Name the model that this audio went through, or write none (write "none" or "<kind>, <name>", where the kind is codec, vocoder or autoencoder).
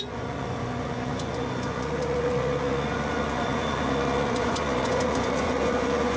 vocoder, Vocos